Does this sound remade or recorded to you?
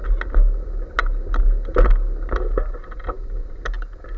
recorded